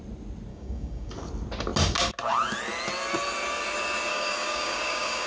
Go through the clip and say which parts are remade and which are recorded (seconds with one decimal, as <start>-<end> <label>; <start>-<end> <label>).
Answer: 0.0-0.5 recorded; 0.5-1.1 remade; 1.1-4.1 recorded; 4.1-5.3 remade